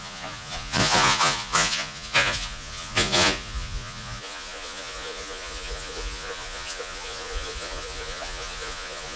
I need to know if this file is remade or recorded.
remade